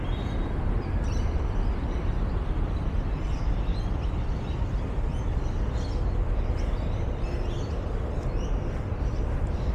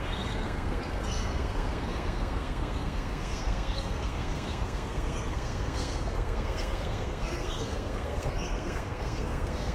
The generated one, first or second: second